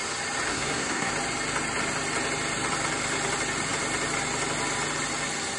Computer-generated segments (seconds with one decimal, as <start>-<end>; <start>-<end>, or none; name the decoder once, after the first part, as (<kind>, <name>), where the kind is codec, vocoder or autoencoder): 0.5-1.1 (codec, SNAC)